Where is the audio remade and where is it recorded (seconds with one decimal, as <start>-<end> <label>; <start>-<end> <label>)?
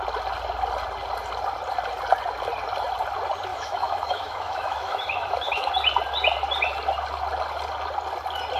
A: 0.0-3.5 recorded; 3.5-5.7 remade; 5.7-8.6 recorded